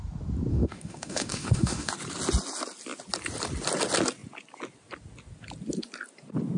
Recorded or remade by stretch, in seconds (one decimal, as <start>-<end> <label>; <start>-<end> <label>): 0.0-0.5 recorded; 0.5-1.9 remade; 1.9-6.6 recorded